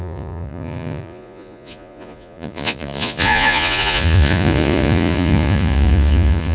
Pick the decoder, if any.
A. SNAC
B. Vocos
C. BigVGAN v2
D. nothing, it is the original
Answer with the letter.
B